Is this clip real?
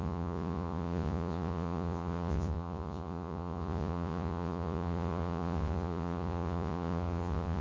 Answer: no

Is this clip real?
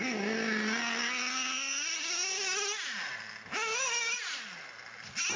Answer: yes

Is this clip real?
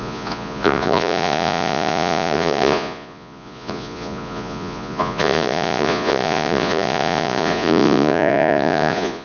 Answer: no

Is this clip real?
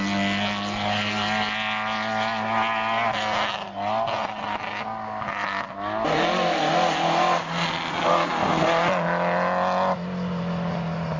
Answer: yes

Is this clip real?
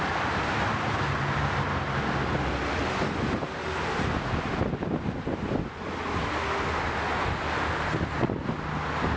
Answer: yes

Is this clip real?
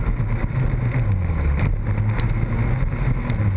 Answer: yes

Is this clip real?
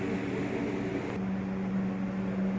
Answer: yes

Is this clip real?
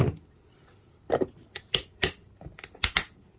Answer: yes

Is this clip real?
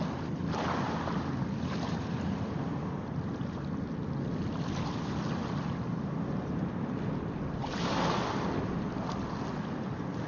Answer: yes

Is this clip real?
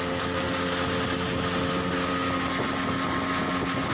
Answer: yes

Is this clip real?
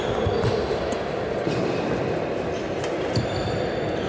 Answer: yes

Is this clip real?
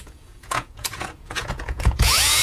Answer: no